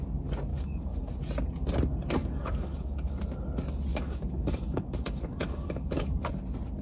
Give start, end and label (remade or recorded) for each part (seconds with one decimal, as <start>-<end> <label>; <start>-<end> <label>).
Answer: 0.0-0.5 recorded; 0.5-1.1 remade; 1.1-2.2 recorded; 2.2-3.2 remade; 3.2-3.9 recorded; 3.9-6.3 remade; 6.3-6.8 recorded